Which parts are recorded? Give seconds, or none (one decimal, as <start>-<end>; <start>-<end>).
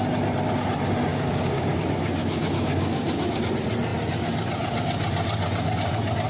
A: 0.0-1.1; 1.8-2.2; 3.4-6.3